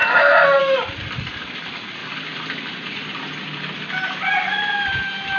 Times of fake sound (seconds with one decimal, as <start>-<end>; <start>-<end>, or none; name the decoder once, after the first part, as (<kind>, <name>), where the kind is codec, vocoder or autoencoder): none